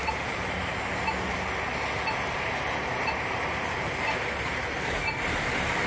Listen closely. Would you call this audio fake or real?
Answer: real